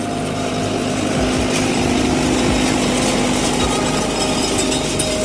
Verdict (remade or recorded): recorded